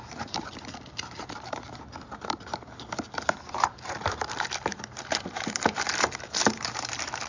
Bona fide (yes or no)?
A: no